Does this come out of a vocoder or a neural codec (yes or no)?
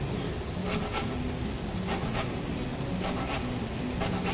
no